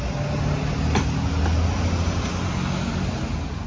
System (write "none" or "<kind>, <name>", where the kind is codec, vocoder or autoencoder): none